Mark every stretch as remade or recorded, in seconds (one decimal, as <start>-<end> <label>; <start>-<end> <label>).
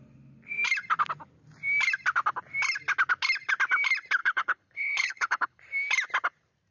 0.0-4.2 recorded; 4.2-5.6 remade; 5.6-6.7 recorded